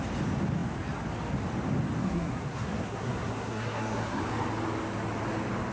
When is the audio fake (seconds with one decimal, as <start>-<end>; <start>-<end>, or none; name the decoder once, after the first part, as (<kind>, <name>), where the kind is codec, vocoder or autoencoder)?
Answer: 2.0-4.2 (codec, SNAC)